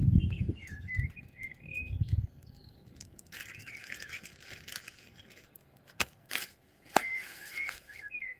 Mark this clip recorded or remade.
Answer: remade